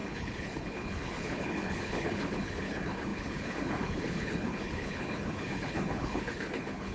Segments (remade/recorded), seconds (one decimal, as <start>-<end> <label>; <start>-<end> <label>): 0.0-6.9 remade